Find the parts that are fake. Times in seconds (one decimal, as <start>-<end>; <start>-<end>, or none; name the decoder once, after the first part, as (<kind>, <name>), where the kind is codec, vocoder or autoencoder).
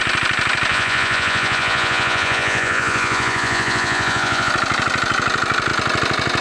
0.7-4.5 (vocoder, Vocos)